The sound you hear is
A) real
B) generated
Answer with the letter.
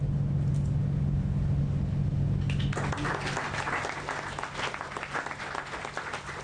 A